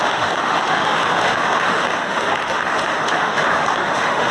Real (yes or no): no